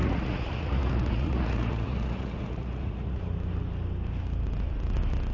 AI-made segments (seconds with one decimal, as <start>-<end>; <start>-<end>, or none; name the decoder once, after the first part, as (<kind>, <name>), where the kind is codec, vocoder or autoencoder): 0.0-3.2 (vocoder, Vocos)